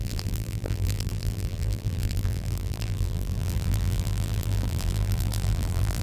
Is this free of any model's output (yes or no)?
no